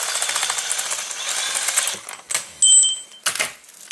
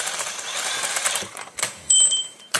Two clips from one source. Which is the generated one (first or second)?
second